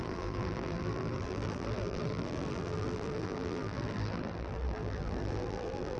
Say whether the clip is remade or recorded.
remade